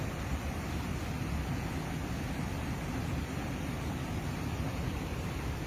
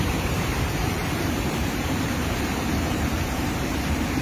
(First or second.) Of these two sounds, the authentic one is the first